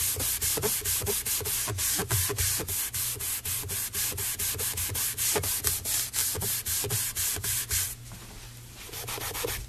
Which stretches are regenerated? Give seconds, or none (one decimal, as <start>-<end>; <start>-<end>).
none